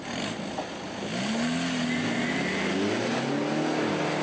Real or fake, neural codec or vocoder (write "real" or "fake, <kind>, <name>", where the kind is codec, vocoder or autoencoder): real